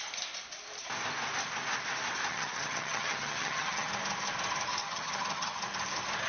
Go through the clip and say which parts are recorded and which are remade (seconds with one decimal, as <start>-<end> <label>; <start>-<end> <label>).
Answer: 0.0-2.3 recorded; 2.3-3.9 remade; 3.9-4.8 recorded; 4.8-5.6 remade; 5.6-6.3 recorded